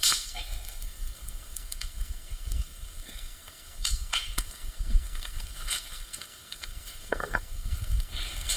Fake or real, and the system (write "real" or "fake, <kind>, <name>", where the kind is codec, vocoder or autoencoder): fake, codec, SNAC